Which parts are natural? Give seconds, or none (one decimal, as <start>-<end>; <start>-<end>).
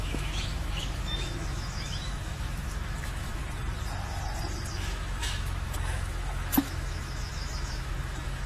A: 3.4-4.7